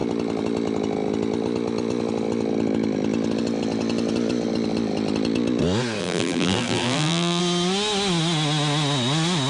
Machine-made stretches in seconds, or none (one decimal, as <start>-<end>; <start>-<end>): 6.0-7.4